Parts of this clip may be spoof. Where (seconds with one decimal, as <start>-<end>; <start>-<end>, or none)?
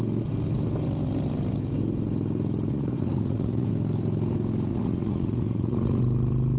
2.7-3.7; 4.7-6.0